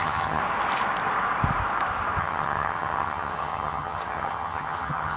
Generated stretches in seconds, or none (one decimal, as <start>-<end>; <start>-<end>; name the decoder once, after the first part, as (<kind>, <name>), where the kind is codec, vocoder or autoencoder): 0.0-0.4 (vocoder, HiFi-GAN); 2.2-5.2